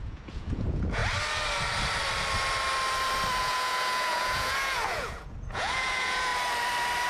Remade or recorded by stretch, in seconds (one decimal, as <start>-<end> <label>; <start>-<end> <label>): 0.0-1.0 remade; 1.0-3.4 recorded; 3.4-6.3 remade; 6.3-7.1 recorded